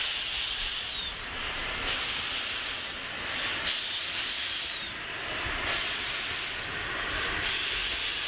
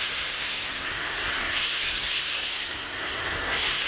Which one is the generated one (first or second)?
second